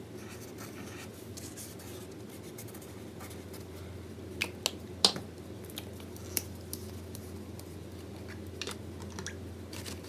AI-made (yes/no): no